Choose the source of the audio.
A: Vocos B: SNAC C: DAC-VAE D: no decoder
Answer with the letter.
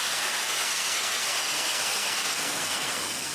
B